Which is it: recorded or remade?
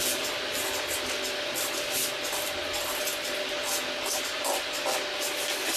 recorded